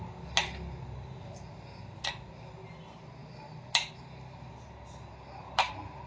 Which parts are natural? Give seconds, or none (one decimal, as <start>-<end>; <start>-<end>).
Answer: 0.0-6.1